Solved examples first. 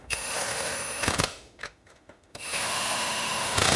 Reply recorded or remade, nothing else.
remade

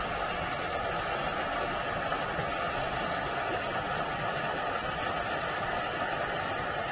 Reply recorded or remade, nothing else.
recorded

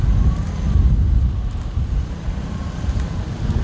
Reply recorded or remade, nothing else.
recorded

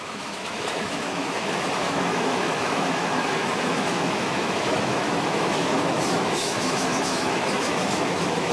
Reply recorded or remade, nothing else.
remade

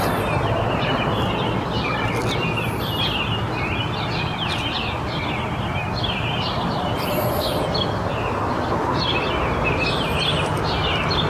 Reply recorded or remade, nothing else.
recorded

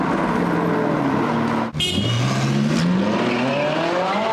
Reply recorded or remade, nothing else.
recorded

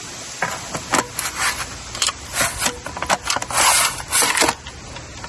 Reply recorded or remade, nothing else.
recorded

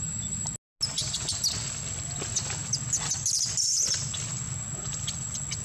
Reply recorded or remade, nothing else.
recorded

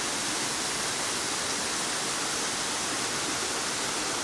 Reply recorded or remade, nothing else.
recorded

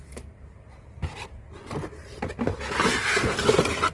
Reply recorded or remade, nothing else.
recorded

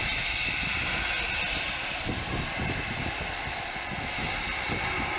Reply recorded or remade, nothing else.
recorded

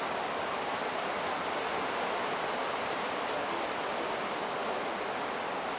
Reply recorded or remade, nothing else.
recorded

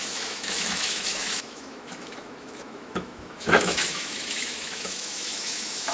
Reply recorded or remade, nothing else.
remade